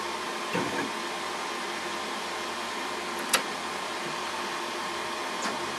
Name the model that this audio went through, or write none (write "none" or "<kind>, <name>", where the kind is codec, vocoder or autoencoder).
none